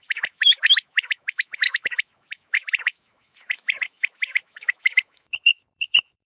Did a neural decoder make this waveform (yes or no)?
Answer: yes